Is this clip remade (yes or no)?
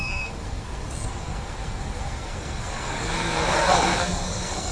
yes